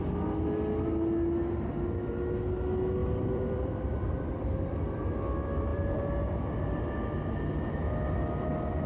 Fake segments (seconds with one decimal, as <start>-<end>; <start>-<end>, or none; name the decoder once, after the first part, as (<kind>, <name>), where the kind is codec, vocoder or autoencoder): 3.0-5.0 (vocoder, BigVGAN v2); 5.7-6.8